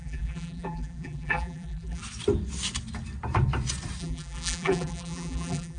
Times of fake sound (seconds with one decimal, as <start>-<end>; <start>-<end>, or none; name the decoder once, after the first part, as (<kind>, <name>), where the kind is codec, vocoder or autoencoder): 0.0-2.0 (vocoder, BigVGAN v2); 4.0-5.8